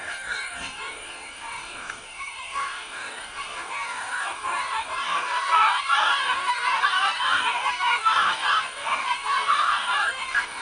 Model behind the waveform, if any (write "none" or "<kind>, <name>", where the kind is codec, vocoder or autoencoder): codec, DAC